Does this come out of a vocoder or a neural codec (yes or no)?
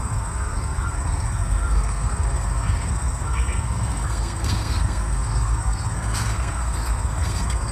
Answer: yes